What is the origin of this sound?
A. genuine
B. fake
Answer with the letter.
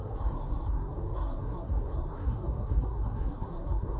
B